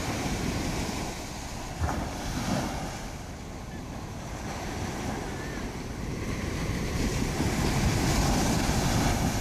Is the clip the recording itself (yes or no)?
yes